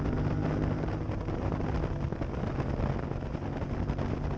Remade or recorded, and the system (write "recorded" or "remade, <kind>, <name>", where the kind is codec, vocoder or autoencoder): recorded